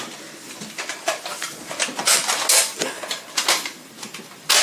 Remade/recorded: recorded